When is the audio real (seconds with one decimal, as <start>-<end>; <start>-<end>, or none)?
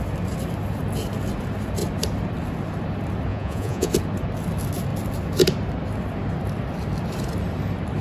0.0-3.3; 3.9-8.0